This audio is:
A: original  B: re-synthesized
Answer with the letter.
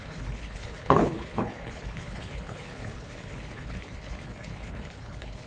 B